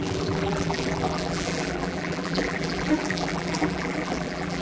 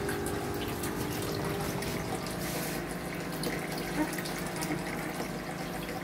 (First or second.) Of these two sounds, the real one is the second